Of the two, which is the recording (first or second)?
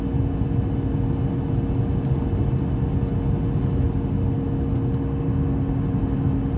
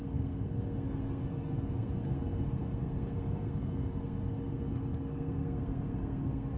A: first